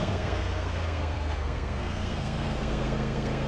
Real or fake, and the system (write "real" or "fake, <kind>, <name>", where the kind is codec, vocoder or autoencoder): fake, codec, SNAC